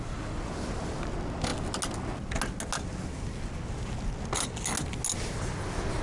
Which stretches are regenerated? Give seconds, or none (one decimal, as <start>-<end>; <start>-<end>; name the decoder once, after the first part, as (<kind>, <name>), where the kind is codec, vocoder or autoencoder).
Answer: none